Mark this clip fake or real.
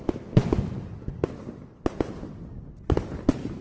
real